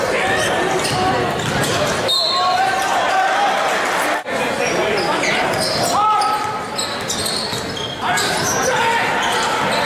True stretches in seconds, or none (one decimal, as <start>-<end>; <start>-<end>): 0.0-9.8